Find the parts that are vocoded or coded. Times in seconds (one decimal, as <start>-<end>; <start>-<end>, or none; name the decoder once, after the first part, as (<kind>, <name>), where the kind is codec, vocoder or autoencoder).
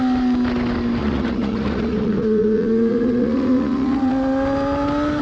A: 1.0-4.1 (vocoder, Vocos)